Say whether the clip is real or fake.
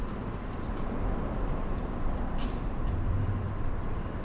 real